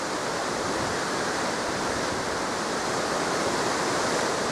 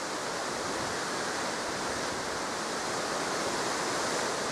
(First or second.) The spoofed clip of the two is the first